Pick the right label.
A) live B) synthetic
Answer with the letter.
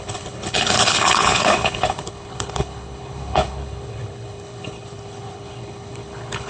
B